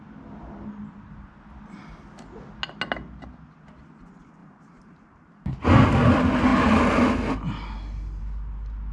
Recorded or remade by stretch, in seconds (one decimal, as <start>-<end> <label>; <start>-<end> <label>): 0.0-4.4 recorded; 4.4-5.5 remade; 5.5-8.9 recorded